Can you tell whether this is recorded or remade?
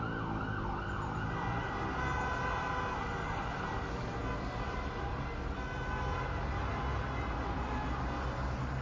recorded